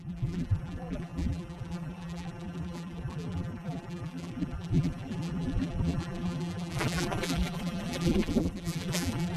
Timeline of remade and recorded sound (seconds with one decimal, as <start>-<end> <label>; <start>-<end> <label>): 0.0-9.4 remade